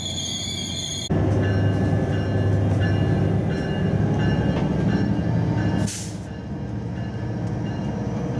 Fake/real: real